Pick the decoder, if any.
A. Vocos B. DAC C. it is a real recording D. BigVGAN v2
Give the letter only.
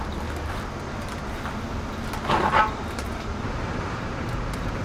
C